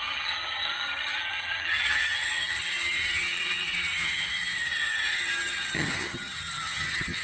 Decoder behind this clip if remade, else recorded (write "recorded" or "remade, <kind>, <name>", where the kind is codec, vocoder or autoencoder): remade, vocoder, HiFi-GAN